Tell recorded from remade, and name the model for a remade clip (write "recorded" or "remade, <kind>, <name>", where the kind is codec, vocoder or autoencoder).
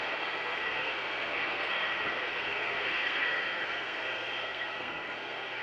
remade, codec, SNAC